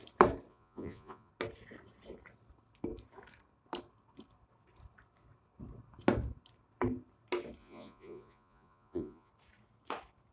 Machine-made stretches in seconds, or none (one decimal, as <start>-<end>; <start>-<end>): 0.5-1.3; 7.6-9.3